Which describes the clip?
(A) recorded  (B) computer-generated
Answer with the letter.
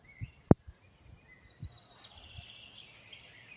B